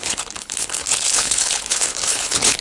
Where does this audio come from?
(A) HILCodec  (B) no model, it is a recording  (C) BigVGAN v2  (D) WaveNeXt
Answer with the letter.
A